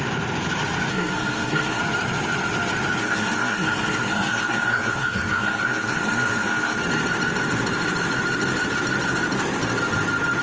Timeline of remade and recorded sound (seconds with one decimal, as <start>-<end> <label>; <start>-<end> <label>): 0.0-0.9 recorded; 0.9-1.8 remade; 1.8-3.0 recorded; 3.0-6.8 remade; 6.8-10.4 recorded